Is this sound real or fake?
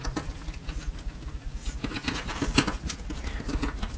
real